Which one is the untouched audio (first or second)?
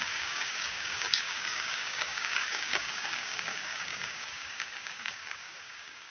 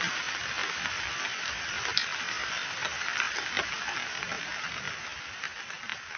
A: second